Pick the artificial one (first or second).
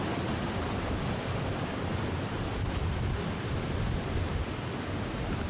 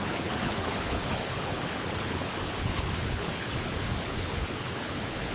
second